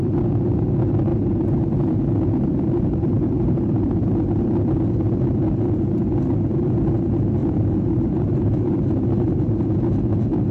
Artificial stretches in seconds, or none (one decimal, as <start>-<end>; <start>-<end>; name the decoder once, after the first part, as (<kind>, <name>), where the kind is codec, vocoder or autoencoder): 1.1-3.9 (vocoder, BigVGAN v2); 7.4-9.4